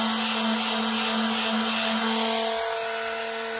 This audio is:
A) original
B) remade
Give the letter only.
A